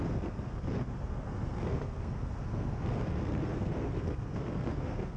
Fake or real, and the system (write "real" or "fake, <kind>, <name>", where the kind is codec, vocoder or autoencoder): fake, codec, SNAC